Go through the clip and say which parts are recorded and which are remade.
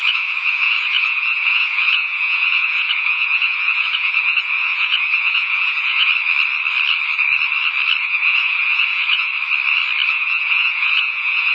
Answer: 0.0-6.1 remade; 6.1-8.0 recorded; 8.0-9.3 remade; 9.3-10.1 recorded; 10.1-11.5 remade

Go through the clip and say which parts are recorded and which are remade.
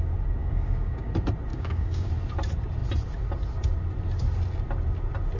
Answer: 0.0-0.4 recorded; 0.4-1.1 remade; 1.1-1.5 recorded; 1.5-2.1 remade; 2.1-5.4 recorded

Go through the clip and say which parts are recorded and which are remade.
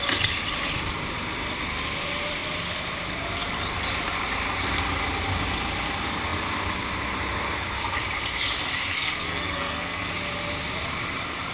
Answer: 0.0-8.9 recorded; 8.9-10.1 remade; 10.1-11.5 recorded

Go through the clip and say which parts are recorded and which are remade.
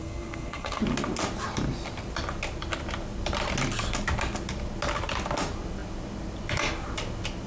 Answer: 0.0-0.8 remade; 0.8-7.5 recorded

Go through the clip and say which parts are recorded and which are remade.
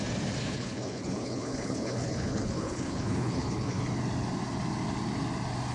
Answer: 0.0-0.4 recorded; 0.4-3.8 remade; 3.8-5.7 recorded